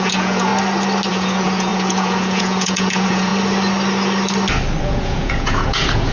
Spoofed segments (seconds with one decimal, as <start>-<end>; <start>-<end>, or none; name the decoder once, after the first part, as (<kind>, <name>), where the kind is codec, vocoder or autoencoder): 0.0-0.5 (vocoder, Vocos); 1.1-3.3; 4.8-6.1